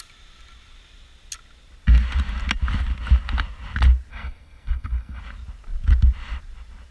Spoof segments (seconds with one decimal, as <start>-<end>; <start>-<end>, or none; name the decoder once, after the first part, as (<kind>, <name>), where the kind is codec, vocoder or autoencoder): 4.1-5.2 (codec, SNAC)